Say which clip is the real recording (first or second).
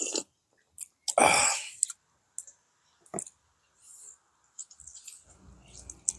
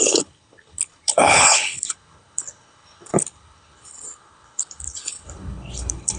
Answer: first